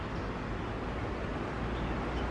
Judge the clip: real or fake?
real